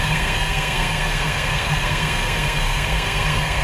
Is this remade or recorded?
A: remade